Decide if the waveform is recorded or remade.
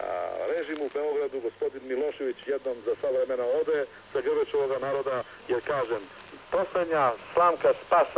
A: recorded